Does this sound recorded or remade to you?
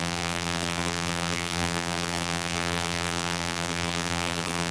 remade